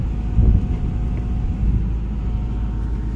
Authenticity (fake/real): real